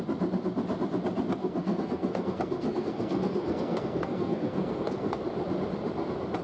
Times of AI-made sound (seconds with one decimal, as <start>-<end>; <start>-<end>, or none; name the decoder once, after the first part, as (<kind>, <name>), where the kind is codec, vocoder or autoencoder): 1.4-5.2 (codec, SNAC)